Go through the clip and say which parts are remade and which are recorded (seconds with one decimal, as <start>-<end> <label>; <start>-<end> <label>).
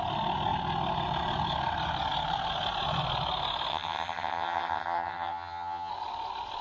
0.0-3.7 recorded; 3.7-5.9 remade; 5.9-6.6 recorded